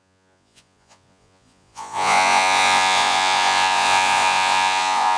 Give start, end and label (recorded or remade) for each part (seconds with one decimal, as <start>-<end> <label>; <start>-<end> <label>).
0.0-5.2 remade